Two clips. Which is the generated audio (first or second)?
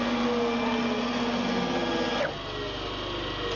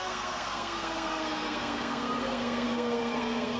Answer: second